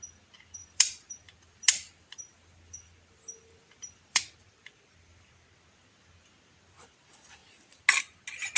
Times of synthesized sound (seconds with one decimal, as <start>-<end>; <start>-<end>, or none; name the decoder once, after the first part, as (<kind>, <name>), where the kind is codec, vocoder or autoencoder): 0.6-5.3 (vocoder, BigVGAN v2)